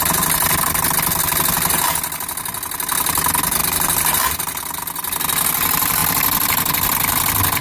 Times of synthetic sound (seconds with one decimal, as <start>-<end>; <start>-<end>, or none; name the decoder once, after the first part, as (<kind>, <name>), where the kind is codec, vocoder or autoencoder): none